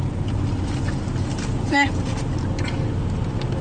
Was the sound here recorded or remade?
recorded